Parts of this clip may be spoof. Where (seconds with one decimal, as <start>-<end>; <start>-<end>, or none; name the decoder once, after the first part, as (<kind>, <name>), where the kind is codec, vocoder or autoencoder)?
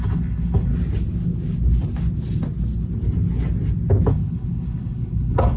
0.0-0.7 (codec, HILCodec); 4.1-5.6